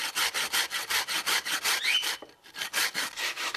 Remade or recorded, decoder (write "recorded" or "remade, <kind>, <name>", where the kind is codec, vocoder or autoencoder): remade, vocoder, BigVGAN v2